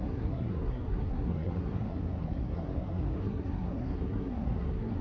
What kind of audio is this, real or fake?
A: fake